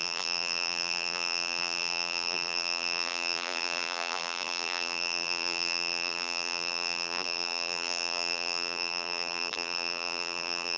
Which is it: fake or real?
fake